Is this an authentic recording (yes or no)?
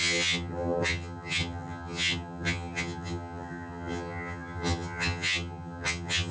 no